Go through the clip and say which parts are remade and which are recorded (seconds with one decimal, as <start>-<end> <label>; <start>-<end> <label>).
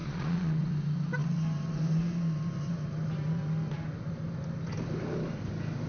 0.0-0.6 remade; 0.6-5.9 recorded